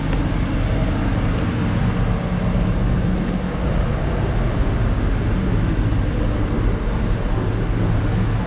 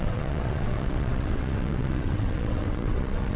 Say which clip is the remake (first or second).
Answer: second